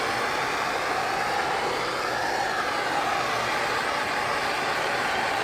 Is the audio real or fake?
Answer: real